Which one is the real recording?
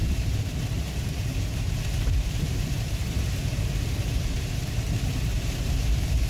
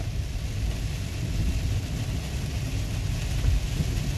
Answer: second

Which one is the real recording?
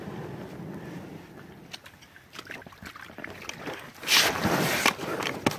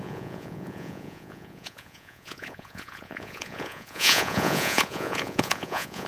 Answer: first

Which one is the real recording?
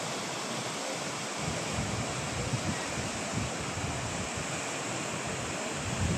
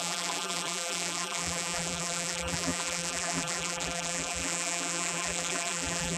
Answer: first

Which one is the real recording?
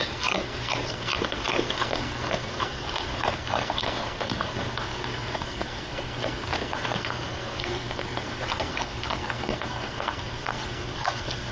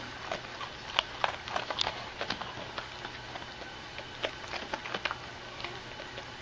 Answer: second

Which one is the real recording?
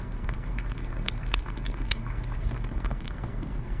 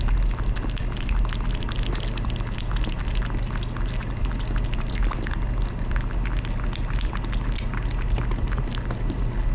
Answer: second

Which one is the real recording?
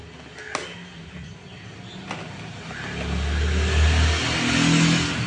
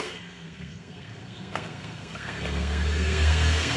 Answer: first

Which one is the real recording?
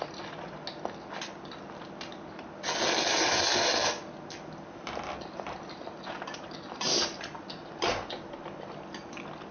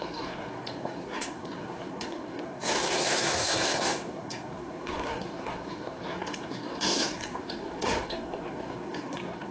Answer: first